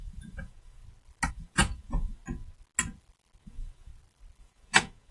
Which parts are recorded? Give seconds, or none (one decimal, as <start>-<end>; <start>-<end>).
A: 0.8-1.3; 2.2-3.4; 3.9-4.4